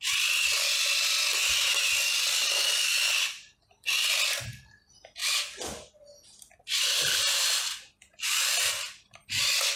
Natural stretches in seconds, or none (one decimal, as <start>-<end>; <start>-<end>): 0.0-9.8